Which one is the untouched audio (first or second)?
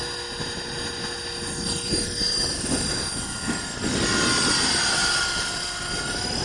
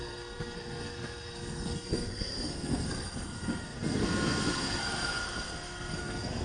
first